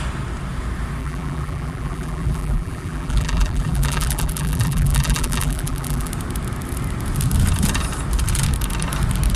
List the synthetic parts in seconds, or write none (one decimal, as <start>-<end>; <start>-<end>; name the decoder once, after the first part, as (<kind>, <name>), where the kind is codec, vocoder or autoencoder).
1.0-6.1 (vocoder, BigVGAN v2)